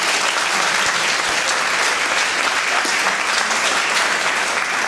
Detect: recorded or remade recorded